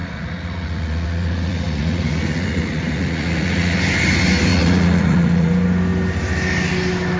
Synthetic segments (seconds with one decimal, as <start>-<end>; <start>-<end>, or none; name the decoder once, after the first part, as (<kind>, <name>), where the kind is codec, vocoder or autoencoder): 0.0-3.8 (vocoder, Vocos); 4.5-5.5